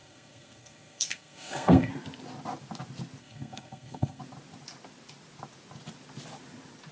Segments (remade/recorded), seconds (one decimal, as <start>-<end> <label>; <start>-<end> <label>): 0.0-1.9 remade; 1.9-3.2 recorded; 3.2-4.2 remade; 4.2-6.9 recorded